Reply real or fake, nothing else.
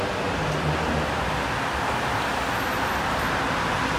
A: real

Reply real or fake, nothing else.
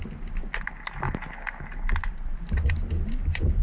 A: real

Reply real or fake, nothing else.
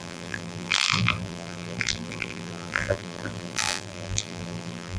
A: fake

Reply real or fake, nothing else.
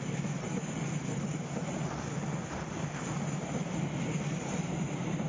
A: real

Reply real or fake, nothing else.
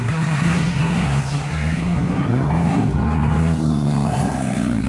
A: fake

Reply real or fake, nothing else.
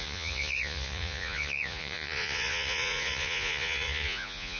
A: fake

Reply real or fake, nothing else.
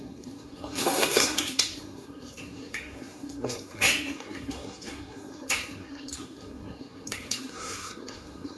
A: fake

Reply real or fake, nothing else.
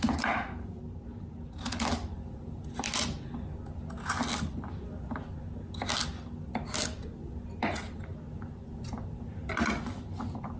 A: real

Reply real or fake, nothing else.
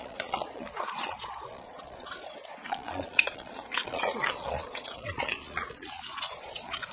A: fake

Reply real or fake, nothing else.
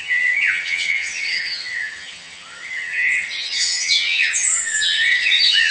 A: fake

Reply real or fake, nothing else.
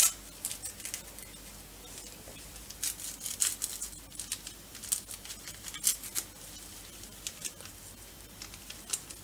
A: real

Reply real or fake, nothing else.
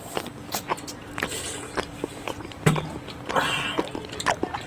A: real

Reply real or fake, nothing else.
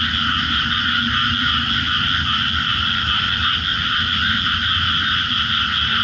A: real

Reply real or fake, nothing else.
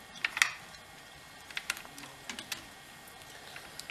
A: real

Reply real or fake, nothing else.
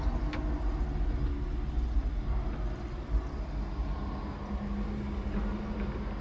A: real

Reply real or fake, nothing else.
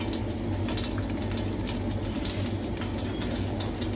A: real